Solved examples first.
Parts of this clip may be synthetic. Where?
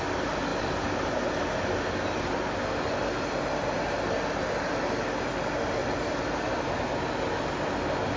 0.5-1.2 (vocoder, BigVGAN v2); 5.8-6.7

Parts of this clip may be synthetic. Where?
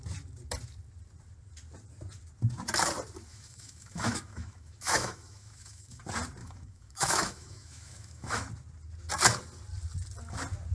3.3-6.0 (autoencoder, DAC-VAE); 6.4-8.5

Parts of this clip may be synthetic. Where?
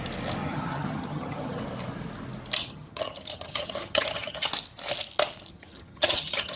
0.4-1.6 (vocoder, HiFi-GAN); 2.6-4.5; 5.5-6.6